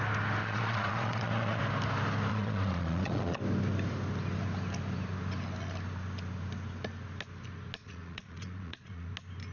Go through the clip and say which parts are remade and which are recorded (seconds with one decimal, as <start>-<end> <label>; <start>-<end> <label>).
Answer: 0.0-0.4 recorded; 0.4-1.6 remade; 1.6-2.3 recorded; 2.3-3.4 remade; 3.4-7.8 recorded; 7.8-9.1 remade; 9.1-9.5 recorded